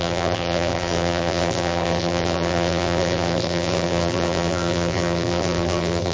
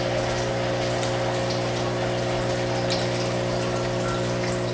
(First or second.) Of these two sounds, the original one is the second